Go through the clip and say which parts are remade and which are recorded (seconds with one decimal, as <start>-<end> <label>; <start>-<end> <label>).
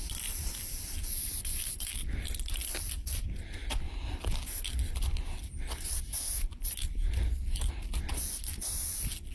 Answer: 0.0-9.3 recorded